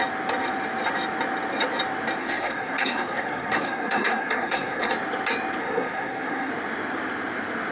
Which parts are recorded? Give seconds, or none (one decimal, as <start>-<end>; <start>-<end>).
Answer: 0.0-2.2; 4.9-5.6; 6.5-7.7